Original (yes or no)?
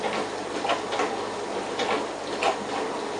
yes